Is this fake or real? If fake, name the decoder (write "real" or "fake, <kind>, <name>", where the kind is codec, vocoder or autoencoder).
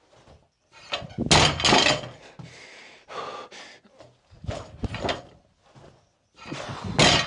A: real